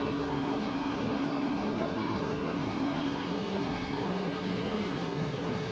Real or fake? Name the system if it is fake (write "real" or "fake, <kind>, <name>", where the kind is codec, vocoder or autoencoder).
fake, codec, SNAC